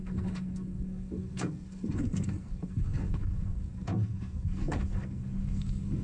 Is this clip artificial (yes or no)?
yes